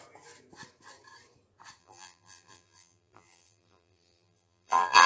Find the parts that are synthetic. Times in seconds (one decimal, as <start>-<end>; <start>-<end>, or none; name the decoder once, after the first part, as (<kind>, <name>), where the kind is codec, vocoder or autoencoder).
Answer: 1.8-5.1 (vocoder, BigVGAN v2)